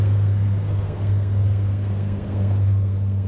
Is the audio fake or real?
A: fake